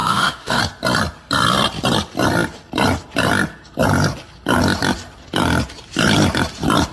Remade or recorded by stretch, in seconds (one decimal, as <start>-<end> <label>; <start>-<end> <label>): 0.0-0.6 remade; 0.6-6.9 recorded